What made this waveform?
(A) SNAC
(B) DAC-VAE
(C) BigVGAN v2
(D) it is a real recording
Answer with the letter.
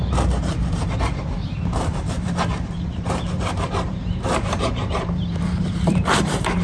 C